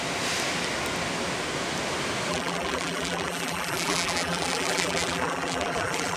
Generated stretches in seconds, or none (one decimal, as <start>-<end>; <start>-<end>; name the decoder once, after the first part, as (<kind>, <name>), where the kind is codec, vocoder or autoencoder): 2.3-6.2 (vocoder, BigVGAN v2)